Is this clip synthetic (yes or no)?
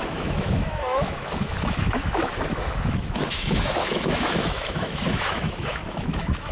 yes